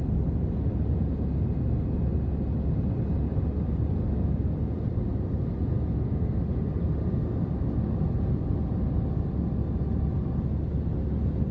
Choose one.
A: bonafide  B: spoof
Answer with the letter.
A